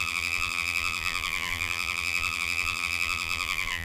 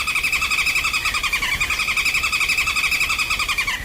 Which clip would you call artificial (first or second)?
first